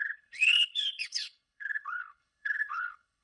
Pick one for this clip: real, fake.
fake